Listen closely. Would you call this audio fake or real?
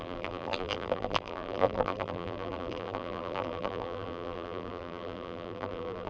fake